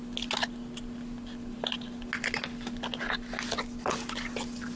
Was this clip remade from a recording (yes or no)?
no